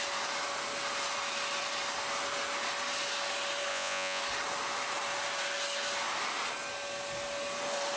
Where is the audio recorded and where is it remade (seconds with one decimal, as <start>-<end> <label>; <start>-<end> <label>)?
0.0-3.7 recorded; 3.7-4.2 remade; 4.2-8.0 recorded